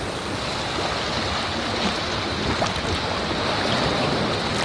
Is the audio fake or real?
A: real